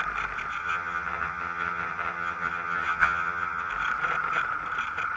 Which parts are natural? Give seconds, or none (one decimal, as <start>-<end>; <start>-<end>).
0.0-0.6; 3.7-5.2